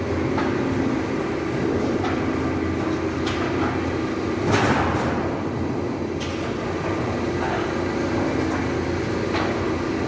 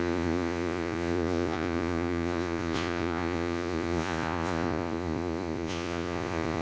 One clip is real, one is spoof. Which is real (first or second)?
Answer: first